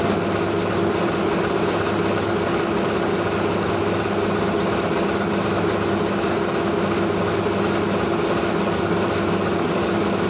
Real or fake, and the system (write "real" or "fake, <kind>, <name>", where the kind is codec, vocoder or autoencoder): real